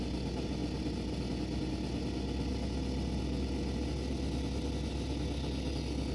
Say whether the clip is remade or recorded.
recorded